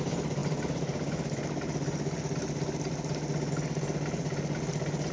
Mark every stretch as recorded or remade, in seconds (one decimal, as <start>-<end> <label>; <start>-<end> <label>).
0.0-5.1 recorded